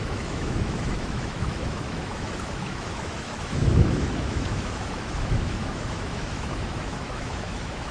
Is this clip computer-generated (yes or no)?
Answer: yes